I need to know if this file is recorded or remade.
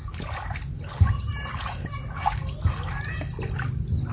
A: recorded